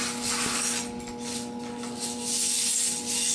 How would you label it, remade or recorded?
recorded